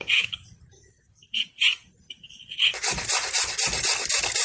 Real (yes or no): no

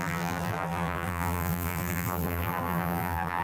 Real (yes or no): no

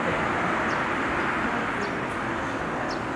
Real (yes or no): yes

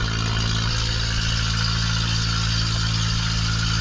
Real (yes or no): yes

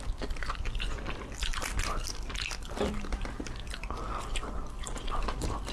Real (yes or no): no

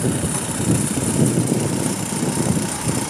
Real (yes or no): no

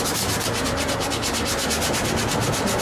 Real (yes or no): yes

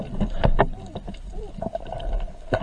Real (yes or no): no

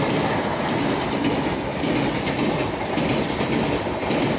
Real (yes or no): yes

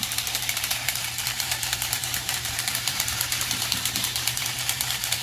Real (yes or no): no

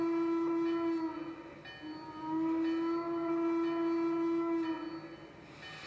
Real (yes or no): yes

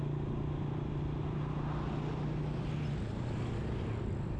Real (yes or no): yes